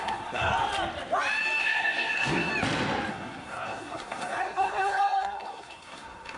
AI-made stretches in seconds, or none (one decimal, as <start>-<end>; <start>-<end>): 0.0-0.5; 1.6-2.5; 3.1-6.4